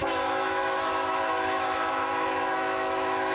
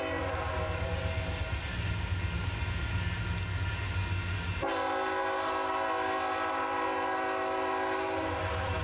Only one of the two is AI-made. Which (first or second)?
first